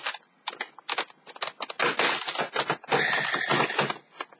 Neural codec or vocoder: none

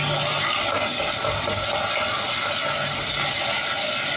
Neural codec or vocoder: none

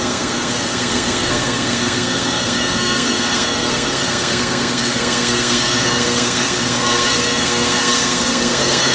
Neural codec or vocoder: codec, SNAC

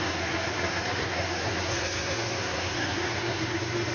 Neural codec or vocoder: codec, SNAC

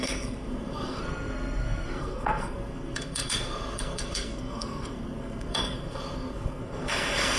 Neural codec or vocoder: codec, SNAC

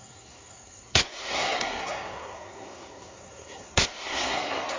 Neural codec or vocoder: codec, SNAC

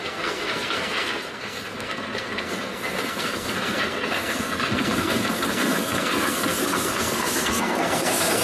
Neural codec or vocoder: codec, SNAC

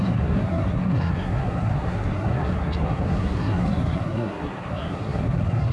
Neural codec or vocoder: codec, SNAC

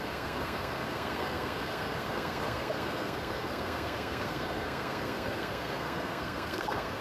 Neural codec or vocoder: codec, SNAC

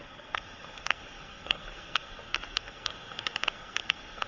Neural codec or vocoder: codec, SNAC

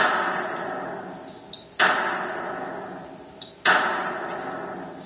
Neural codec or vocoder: none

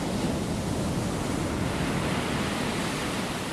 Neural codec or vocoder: none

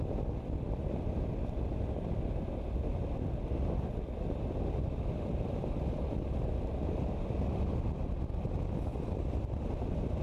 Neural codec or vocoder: none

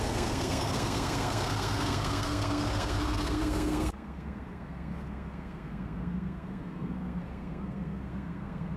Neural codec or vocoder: codec, SNAC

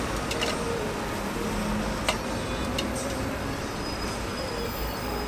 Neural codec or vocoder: none